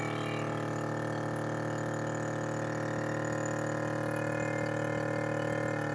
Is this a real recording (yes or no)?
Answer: yes